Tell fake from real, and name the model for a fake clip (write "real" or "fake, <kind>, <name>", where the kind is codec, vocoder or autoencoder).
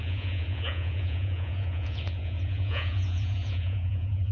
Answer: fake, vocoder, Vocos